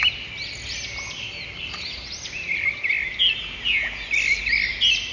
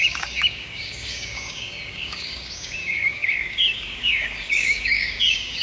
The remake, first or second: second